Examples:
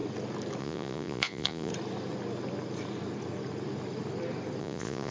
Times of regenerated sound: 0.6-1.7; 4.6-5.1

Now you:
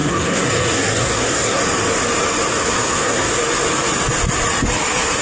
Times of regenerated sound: 0.0-1.6; 2.6-3.4